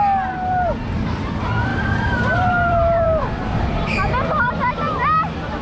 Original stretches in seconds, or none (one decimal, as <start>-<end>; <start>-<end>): 0.0-1.7; 4.6-5.6